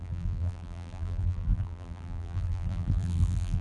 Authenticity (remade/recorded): remade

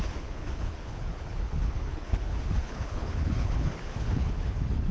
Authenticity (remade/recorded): remade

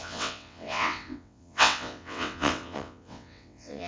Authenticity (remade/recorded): remade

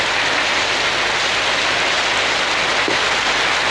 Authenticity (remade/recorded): recorded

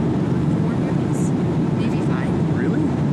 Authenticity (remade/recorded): recorded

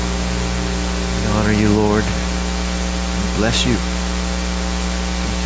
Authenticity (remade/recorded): recorded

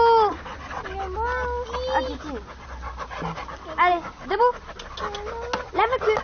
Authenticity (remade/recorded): recorded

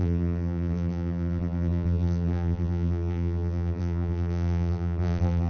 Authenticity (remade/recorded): remade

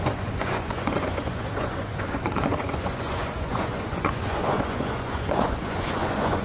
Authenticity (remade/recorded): remade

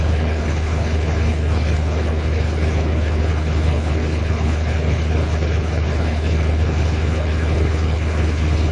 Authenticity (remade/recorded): remade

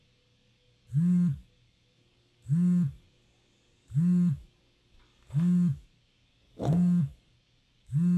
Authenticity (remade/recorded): remade